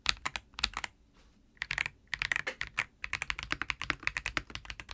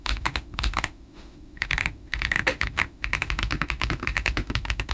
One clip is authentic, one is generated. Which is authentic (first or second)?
first